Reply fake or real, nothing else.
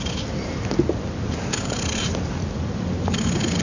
real